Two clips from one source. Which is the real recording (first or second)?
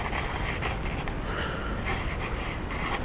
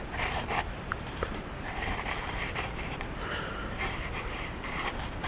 first